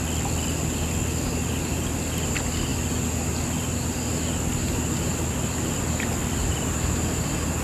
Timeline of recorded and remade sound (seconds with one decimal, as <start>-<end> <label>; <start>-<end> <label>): 0.0-7.6 recorded